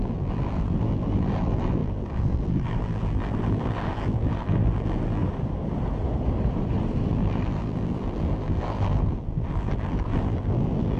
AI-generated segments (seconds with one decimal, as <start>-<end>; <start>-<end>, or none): 0.0-5.2; 7.1-11.0